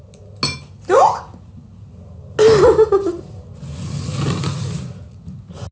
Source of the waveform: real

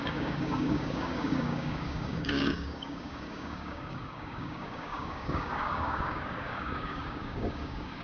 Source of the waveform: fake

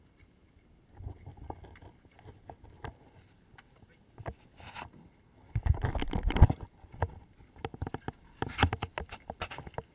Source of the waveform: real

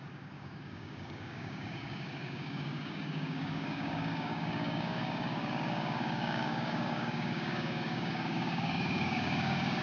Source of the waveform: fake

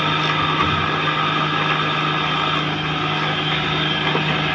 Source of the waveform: real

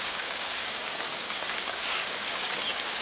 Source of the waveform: fake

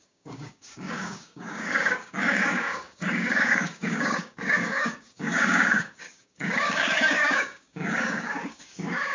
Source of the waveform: fake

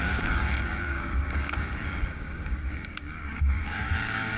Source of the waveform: fake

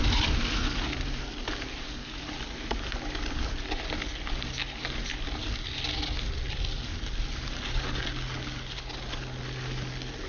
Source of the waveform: real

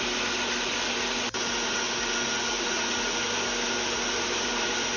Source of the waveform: real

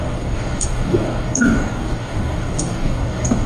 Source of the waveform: fake